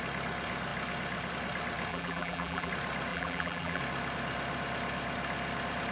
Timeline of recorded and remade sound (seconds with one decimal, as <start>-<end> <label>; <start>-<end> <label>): 0.0-1.9 recorded; 1.9-2.7 remade; 2.7-3.1 recorded; 3.1-3.8 remade; 3.8-5.9 recorded